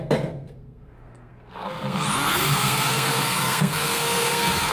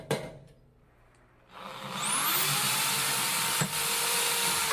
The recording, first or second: second